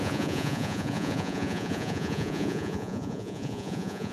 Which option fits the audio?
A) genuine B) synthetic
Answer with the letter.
B